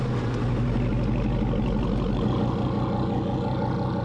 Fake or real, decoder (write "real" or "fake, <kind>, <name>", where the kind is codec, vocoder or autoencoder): real